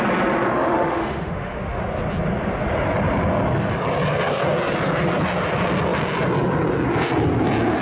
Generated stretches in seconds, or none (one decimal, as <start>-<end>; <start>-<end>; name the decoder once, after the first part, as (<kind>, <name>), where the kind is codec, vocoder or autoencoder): 0.5-1.8 (autoencoder, DAC-VAE)